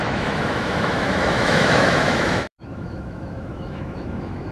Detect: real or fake fake